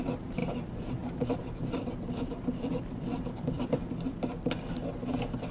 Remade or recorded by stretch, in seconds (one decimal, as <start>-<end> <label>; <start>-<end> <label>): 0.0-0.4 recorded; 0.4-3.7 remade; 3.7-5.5 recorded